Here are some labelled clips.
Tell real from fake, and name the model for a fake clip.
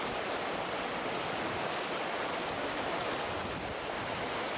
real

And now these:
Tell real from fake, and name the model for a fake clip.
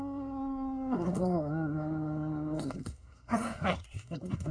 fake, codec, SNAC